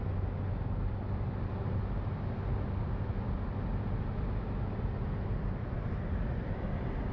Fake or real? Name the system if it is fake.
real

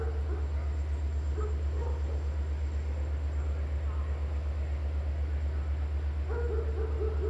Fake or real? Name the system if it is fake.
real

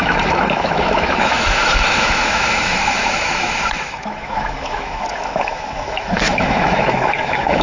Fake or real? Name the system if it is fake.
fake, autoencoder, DAC-VAE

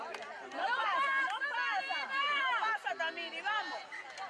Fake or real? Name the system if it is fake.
real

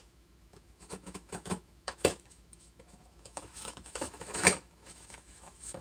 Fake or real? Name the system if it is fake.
fake, autoencoder, DAC-VAE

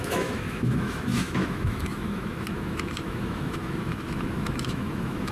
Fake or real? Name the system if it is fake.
fake, autoencoder, DAC-VAE